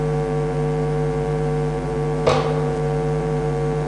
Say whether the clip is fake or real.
fake